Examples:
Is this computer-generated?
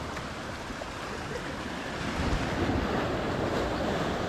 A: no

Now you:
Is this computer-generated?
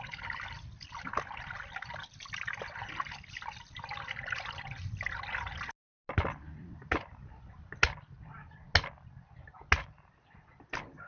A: no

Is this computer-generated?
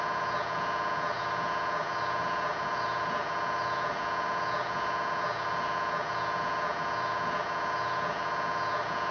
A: yes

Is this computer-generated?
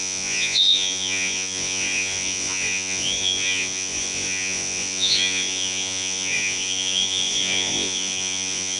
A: yes